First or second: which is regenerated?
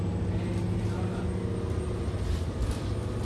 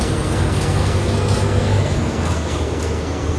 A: second